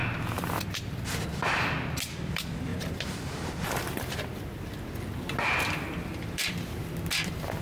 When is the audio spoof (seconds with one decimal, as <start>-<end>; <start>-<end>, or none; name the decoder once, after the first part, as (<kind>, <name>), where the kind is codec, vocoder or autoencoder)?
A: 2.7-4.1 (vocoder, BigVGAN v2); 6.1-6.8